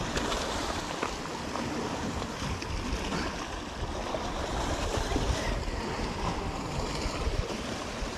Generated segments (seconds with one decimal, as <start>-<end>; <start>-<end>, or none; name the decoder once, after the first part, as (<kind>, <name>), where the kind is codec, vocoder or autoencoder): 0.0-1.3 (vocoder, BigVGAN v2); 4.5-8.2

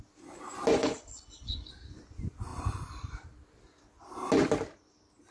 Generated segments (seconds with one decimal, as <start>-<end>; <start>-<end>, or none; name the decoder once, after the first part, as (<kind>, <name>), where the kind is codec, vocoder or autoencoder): 0.8-1.7 (codec, HILCodec)

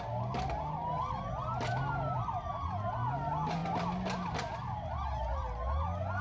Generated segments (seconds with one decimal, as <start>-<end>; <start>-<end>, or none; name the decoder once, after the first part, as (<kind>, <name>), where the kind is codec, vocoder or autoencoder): none